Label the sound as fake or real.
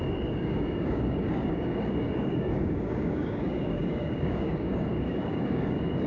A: fake